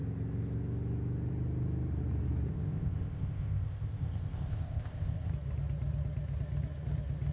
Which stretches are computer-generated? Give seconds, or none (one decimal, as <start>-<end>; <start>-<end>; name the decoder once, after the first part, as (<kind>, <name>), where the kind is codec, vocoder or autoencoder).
2.5-5.3 (codec, ZipCodec)